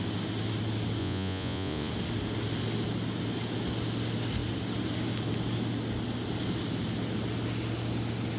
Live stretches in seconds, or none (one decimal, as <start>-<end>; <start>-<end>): 0.0-1.0; 1.9-8.4